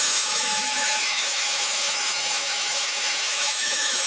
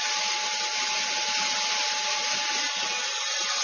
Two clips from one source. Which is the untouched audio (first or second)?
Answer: second